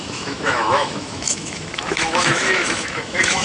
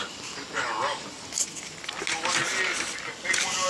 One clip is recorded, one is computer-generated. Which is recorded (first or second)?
second